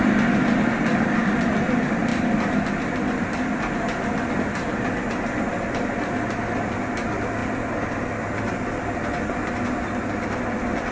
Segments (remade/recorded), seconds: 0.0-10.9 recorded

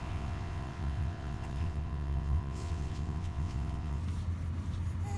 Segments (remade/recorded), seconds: 0.0-4.0 remade; 4.0-5.2 recorded

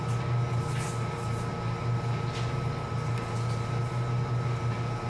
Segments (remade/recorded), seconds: 0.0-5.1 recorded